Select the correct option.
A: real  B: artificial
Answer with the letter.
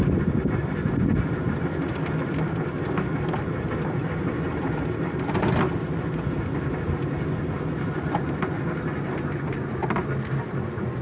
A